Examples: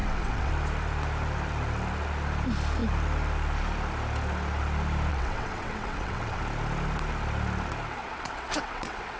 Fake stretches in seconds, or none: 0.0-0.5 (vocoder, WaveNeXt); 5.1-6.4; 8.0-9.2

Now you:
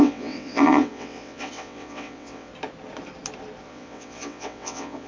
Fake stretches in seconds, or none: 0.0-2.5 (vocoder, WaveNeXt); 3.6-5.1

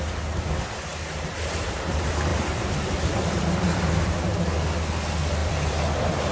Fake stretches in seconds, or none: 2.3-3.4 (vocoder, BigVGAN v2); 5.4-6.3

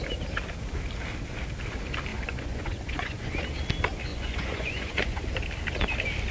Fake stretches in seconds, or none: 2.1-3.4 (vocoder, Vocos); 4.1-5.2

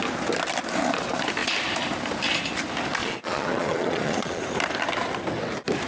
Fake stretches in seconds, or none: 3.0-4.4 (vocoder, Vocos)

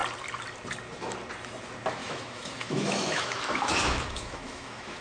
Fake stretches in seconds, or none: 2.0-5.0 (autoencoder, DAC-VAE)